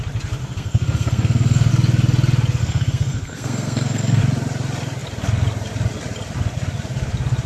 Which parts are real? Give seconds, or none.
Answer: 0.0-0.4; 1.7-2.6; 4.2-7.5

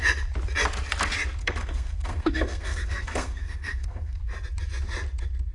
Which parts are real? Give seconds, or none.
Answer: 0.0-1.4; 4.2-5.5

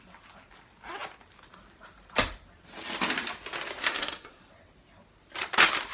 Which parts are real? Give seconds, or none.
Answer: 0.0-3.8; 4.4-5.9

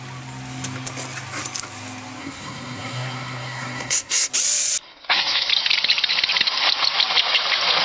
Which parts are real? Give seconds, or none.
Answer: 0.0-2.2; 4.3-4.8; 5.5-7.8